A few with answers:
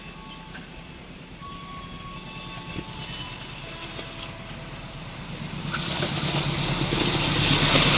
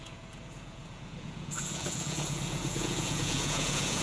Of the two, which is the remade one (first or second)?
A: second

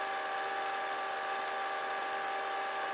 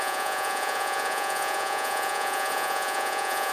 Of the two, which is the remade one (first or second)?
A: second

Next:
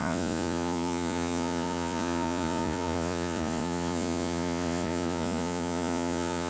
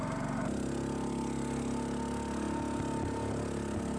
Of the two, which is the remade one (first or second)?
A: first